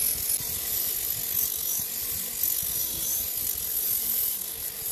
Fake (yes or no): no